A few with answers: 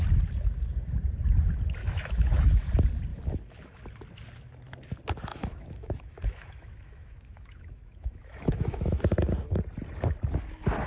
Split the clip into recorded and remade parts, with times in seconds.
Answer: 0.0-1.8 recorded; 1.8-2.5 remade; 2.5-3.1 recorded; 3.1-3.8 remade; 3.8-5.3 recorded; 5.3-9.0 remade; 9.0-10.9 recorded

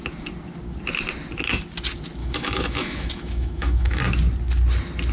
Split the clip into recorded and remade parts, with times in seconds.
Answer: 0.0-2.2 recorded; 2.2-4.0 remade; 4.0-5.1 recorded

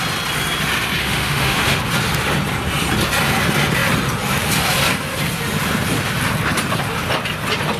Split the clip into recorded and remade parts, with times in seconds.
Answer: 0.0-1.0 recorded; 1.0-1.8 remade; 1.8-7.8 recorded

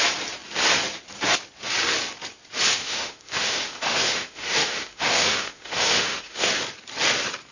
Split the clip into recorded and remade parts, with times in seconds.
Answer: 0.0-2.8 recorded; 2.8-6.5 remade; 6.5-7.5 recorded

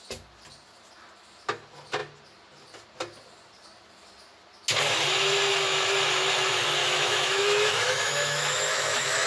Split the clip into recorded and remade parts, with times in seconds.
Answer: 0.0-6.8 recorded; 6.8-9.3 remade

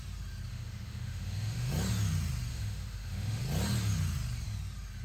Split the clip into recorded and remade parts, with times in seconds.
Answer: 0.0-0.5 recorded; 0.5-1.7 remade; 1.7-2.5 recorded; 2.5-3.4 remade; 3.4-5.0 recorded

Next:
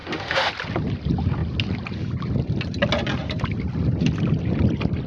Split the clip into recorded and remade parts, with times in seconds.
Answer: 0.0-0.5 remade; 0.5-5.1 recorded